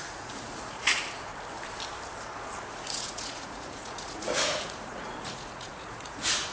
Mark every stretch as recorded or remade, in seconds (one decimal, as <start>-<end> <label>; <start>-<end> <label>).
0.0-1.3 remade; 1.3-2.7 recorded; 2.7-6.5 remade